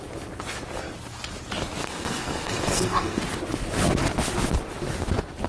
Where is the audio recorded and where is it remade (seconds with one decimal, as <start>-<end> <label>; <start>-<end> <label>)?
0.0-1.8 recorded; 1.8-3.2 remade; 3.2-5.5 recorded